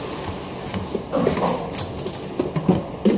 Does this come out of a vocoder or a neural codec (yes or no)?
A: no